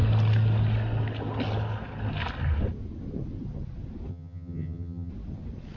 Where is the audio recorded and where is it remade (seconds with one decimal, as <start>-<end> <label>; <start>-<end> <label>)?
0.0-4.1 recorded; 4.1-5.1 remade; 5.1-5.8 recorded